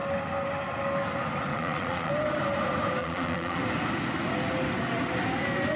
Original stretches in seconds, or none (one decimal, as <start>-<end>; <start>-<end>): 0.0-1.5; 2.1-3.0; 3.6-5.8